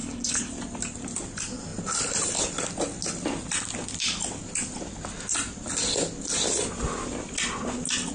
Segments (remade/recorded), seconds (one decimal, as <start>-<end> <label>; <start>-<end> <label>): 0.0-0.5 remade; 0.5-8.1 recorded